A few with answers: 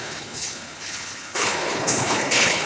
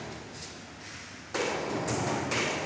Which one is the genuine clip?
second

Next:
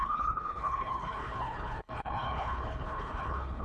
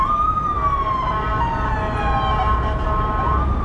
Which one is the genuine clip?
second